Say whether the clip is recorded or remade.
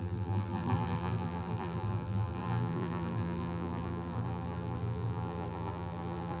remade